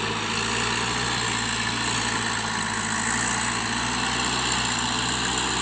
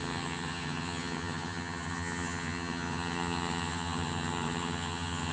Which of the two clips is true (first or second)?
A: first